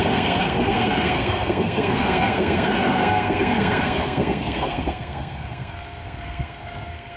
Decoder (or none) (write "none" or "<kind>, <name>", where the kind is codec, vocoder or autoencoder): codec, SNAC